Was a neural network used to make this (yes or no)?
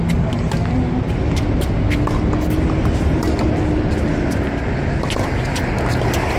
no